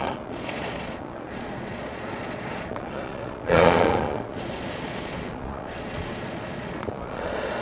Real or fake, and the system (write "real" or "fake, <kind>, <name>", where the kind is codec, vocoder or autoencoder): fake, vocoder, Vocos